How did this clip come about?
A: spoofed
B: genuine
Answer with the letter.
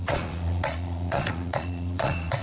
A